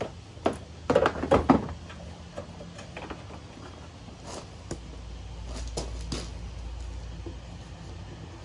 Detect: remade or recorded recorded